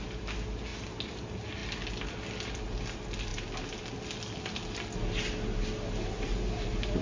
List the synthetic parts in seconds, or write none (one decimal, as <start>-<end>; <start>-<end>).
none